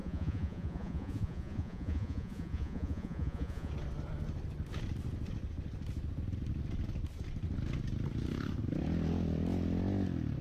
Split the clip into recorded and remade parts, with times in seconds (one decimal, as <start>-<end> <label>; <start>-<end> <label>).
0.0-3.7 remade; 3.7-10.4 recorded